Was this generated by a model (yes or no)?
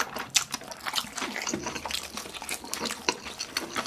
no